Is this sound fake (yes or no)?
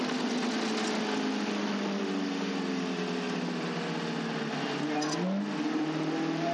no